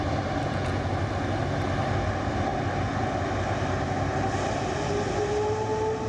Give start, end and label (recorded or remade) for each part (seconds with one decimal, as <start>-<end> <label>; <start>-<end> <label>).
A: 0.0-0.4 recorded; 0.4-0.9 remade; 0.9-6.1 recorded